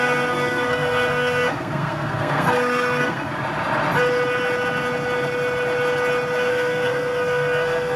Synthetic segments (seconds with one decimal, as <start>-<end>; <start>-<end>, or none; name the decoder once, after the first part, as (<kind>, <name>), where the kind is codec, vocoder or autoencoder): 0.0-3.3 (codec, SNAC); 6.5-8.0